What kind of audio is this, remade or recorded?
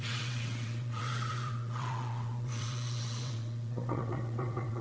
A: remade